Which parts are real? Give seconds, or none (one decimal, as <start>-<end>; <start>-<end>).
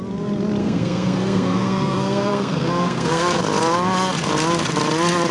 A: 0.0-0.6; 3.4-5.3